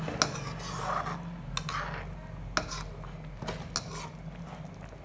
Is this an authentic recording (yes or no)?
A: yes